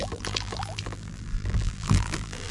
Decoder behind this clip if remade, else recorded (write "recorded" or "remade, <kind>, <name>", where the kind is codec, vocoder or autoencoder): remade, vocoder, BigVGAN v2